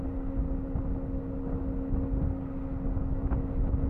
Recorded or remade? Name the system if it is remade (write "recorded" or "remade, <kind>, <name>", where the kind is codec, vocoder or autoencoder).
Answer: recorded